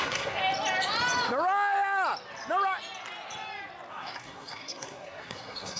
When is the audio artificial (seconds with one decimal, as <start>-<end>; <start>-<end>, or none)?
0.0-0.4; 3.9-5.8